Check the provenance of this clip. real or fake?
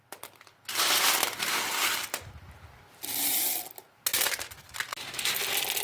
real